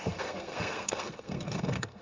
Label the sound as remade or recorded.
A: remade